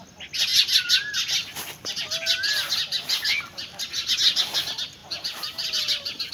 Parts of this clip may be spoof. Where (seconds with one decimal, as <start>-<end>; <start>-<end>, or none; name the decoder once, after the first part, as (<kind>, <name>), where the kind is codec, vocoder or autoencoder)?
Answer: 5.0-6.3 (vocoder, BigVGAN v2)